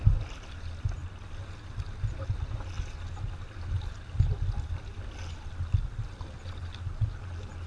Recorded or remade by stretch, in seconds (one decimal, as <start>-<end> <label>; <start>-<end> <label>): 0.0-7.7 recorded